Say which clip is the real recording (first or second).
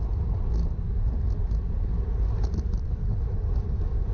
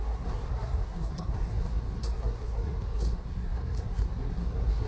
first